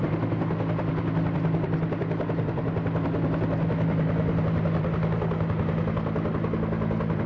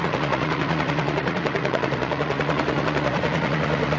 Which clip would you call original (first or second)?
first